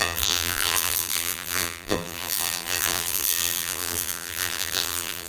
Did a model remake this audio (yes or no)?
yes